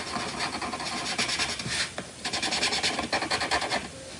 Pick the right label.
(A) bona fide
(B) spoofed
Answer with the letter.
A